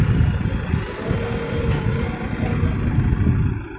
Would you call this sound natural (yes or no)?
yes